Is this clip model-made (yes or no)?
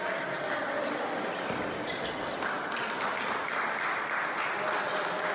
no